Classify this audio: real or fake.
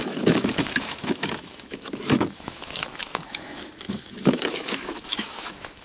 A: fake